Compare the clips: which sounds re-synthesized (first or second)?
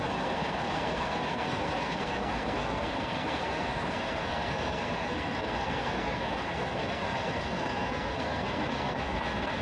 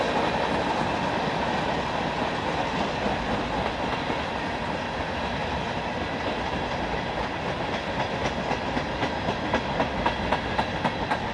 first